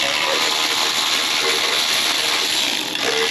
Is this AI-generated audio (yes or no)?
no